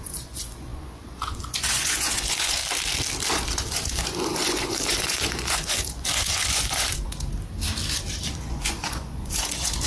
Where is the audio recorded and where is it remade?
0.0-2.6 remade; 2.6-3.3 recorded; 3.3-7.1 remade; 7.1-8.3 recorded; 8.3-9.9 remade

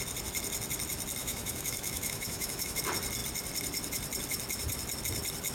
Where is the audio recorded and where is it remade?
0.0-1.2 recorded; 1.2-2.8 remade; 2.8-5.5 recorded

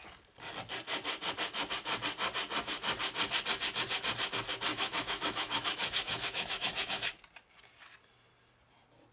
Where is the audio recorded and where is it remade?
0.0-4.7 recorded; 4.7-7.1 remade; 7.1-9.1 recorded